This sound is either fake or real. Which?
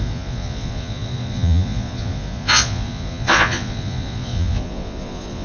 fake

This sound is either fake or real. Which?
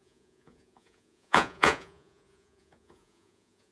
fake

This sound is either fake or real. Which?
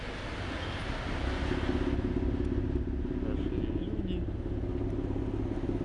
real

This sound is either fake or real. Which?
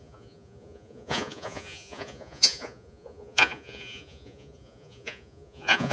fake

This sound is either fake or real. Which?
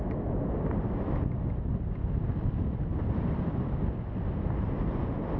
real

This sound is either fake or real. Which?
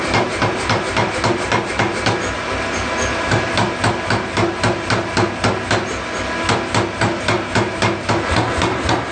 real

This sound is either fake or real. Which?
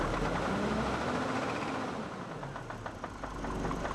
real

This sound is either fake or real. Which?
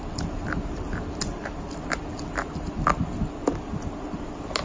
real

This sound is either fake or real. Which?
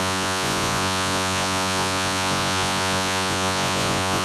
fake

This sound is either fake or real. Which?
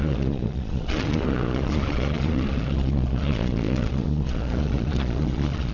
fake